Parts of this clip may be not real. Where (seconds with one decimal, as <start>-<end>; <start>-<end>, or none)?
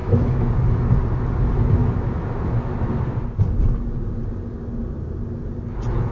0.0-0.5